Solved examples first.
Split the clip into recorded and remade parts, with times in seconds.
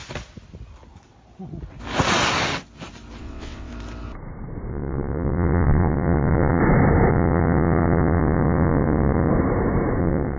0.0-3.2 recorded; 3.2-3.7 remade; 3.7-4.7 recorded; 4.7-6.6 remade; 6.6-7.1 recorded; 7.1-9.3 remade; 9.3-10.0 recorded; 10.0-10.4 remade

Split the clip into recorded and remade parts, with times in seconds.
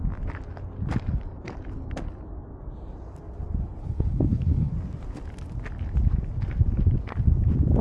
0.0-3.8 recorded; 3.8-4.7 remade; 4.7-7.8 recorded